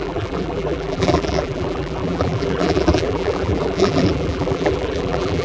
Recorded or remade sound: remade